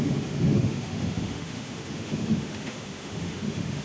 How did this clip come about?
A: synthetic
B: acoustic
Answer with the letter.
A